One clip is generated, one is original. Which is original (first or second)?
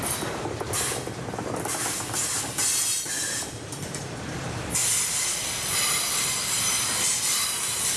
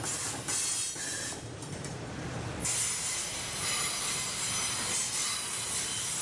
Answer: second